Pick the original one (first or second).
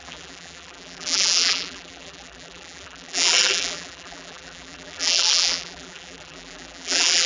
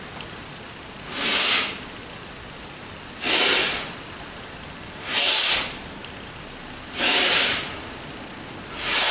second